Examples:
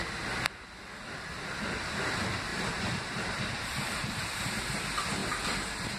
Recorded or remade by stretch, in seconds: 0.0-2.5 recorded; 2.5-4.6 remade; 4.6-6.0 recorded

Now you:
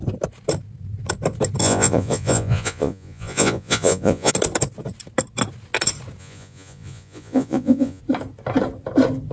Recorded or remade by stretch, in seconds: 0.0-1.6 recorded; 1.6-4.3 remade; 4.3-6.2 recorded; 6.2-8.0 remade; 8.0-9.3 recorded

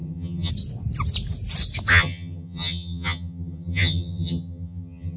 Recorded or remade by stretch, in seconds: 0.0-0.5 remade; 0.5-1.9 recorded; 1.9-5.2 remade

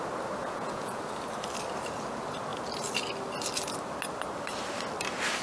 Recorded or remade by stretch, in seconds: 0.0-0.4 recorded; 0.4-1.0 remade; 1.0-5.4 recorded